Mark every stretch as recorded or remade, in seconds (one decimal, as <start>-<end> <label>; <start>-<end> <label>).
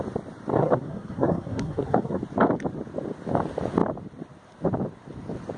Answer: 0.0-0.5 recorded; 0.5-2.2 remade; 2.2-5.6 recorded